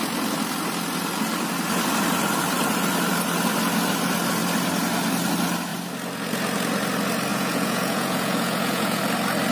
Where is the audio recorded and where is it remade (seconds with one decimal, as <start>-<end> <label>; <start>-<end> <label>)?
0.0-7.3 recorded; 7.3-9.0 remade; 9.0-9.5 recorded